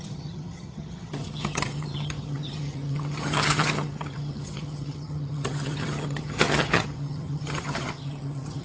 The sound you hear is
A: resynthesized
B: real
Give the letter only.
A